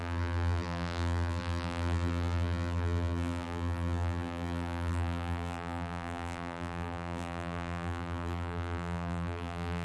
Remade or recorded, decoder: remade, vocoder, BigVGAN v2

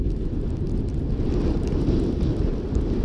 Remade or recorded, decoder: recorded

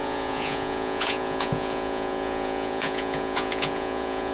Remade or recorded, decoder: remade, vocoder, Vocos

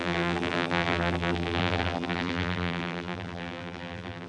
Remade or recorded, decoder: remade, vocoder, BigVGAN v2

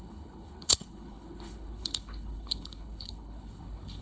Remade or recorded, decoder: remade, codec, HILCodec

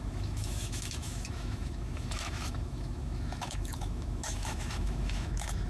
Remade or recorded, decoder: remade, autoencoder, DAC-VAE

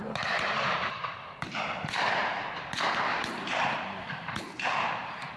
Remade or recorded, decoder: remade, vocoder, BigVGAN v2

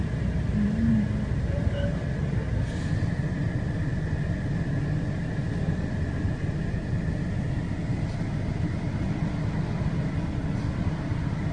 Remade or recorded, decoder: recorded